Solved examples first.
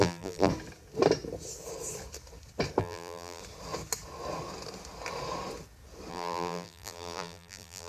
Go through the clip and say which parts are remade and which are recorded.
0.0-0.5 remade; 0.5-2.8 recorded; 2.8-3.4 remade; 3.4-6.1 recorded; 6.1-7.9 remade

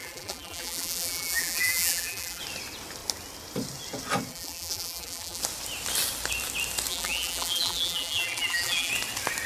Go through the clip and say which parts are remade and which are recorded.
0.0-2.4 remade; 2.4-4.3 recorded; 4.3-5.4 remade; 5.4-6.9 recorded; 6.9-8.9 remade; 8.9-9.5 recorded

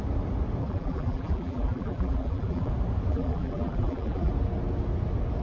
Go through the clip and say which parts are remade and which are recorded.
0.0-0.6 recorded; 0.6-2.7 remade; 2.7-3.1 recorded; 3.1-4.3 remade; 4.3-5.4 recorded

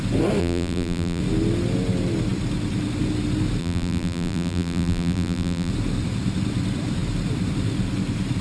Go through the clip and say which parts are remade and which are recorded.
0.0-0.4 recorded; 0.4-1.2 remade; 1.2-3.6 recorded; 3.6-5.7 remade; 5.7-8.4 recorded

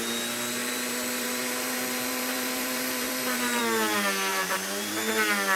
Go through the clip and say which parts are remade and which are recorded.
0.0-0.6 recorded; 0.6-3.6 remade; 3.6-4.3 recorded; 4.3-4.9 remade; 4.9-5.6 recorded

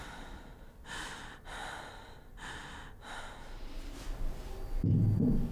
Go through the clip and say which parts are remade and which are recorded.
0.0-1.6 remade; 1.6-4.9 recorded; 4.9-5.5 remade

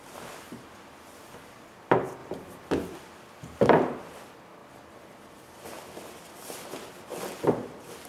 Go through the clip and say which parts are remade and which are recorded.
0.0-2.2 recorded; 2.2-2.7 remade; 2.7-4.6 recorded; 4.6-6.7 remade; 6.7-8.1 recorded